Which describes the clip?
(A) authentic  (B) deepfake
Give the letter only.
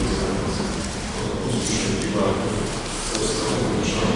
A